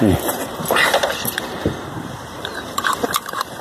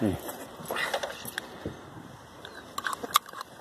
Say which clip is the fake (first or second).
first